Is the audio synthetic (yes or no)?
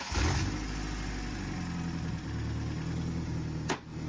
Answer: no